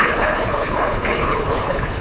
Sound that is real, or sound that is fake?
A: fake